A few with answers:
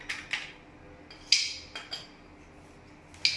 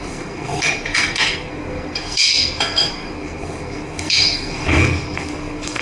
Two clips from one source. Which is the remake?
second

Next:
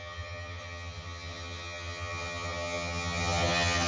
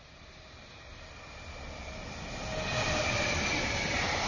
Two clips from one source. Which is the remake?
first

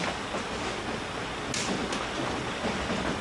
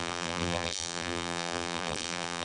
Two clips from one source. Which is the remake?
second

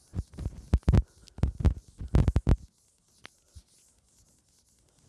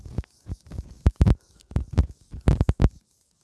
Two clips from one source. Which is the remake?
second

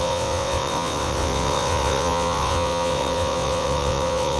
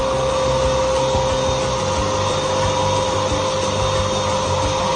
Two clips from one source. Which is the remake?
first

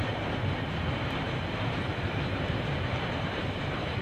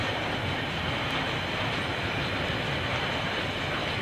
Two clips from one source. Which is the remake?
first